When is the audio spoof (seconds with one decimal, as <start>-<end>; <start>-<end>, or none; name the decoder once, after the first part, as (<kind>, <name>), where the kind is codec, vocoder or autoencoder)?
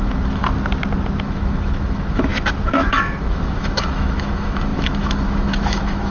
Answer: 0.0-0.4 (autoencoder, DAC-VAE); 1.2-6.1